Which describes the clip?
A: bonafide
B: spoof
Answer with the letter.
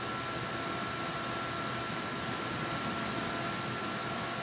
A